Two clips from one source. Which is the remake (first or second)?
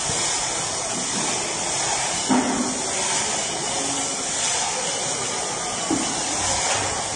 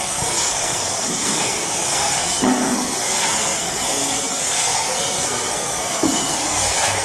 second